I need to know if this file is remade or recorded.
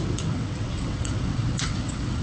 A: remade